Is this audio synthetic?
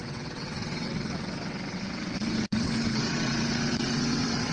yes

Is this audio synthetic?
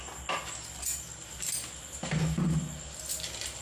no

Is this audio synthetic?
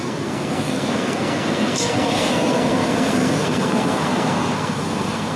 yes